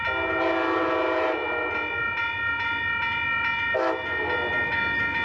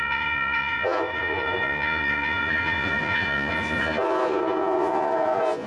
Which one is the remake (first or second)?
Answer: second